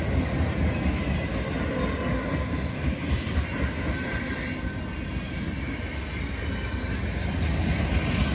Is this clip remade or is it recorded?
recorded